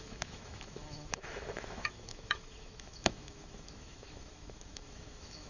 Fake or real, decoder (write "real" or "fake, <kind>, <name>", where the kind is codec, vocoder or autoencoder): fake, autoencoder, DAC-VAE